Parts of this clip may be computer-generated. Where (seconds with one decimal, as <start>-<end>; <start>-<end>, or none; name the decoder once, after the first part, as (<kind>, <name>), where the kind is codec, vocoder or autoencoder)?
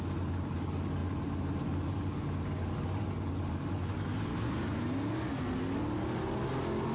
none